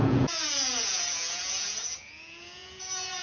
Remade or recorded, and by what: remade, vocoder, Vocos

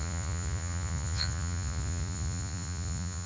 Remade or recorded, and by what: remade, vocoder, Vocos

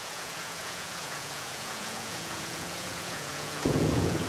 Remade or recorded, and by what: remade, vocoder, Vocos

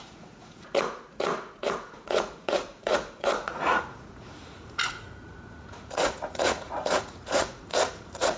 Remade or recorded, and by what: remade, vocoder, Vocos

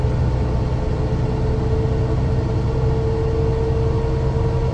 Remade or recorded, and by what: recorded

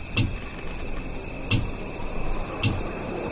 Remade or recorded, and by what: recorded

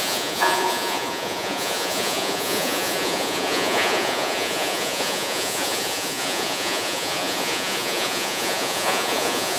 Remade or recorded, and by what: remade, vocoder, Vocos